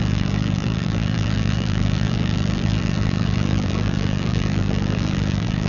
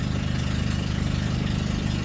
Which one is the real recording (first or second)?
second